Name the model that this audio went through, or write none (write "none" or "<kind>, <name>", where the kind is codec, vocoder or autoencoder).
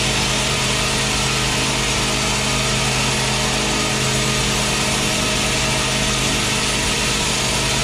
none